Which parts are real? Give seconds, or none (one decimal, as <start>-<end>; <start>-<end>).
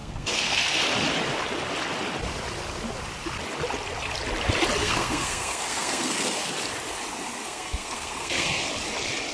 0.8-4.8; 6.5-7.4; 8.7-9.3